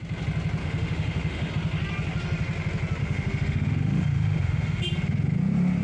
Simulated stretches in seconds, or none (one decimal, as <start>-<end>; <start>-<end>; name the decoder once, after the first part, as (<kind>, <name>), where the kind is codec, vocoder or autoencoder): 0.6-1.5 (autoencoder, DAC-VAE); 3.0-4.8